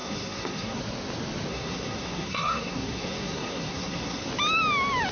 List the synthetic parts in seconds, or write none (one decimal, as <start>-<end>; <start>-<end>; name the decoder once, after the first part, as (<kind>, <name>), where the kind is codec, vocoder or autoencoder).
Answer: 0.0-0.8 (codec, SNAC); 1.5-4.3